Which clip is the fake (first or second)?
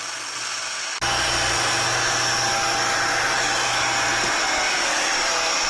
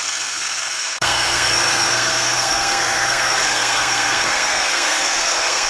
second